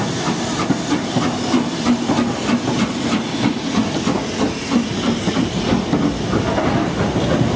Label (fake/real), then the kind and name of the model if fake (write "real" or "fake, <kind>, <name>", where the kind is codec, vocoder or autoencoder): real